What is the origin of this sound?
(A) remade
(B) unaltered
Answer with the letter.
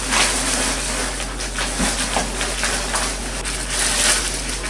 B